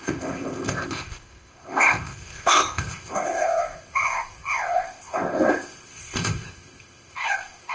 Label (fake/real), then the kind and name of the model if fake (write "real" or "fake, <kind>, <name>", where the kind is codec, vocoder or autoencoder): fake, codec, ZipCodec